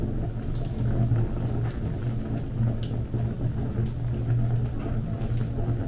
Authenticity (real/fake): real